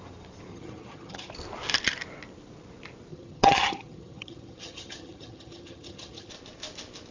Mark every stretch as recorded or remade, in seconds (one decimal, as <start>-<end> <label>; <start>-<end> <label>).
0.0-0.5 recorded; 0.5-1.3 remade; 1.3-3.1 recorded; 3.1-6.3 remade; 6.3-7.1 recorded